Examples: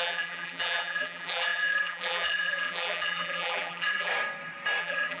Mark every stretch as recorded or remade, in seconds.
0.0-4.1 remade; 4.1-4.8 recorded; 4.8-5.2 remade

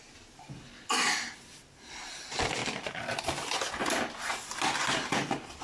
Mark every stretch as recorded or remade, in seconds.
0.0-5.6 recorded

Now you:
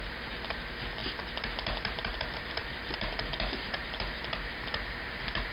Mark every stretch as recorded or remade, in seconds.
0.0-2.6 recorded; 2.6-4.2 remade; 4.2-5.5 recorded

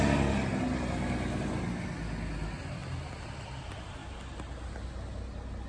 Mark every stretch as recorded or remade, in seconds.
0.0-5.7 recorded